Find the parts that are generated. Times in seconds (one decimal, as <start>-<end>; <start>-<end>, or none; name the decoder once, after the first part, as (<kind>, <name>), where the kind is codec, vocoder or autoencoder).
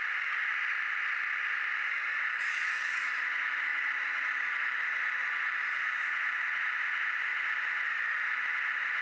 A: 2.3-3.1 (codec, DAC)